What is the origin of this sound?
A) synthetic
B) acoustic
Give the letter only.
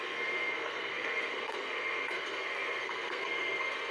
A